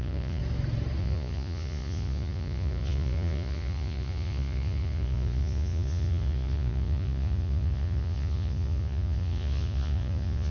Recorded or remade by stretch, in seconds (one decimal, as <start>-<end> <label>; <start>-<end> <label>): 0.0-0.4 remade; 0.4-1.0 recorded; 1.0-10.5 remade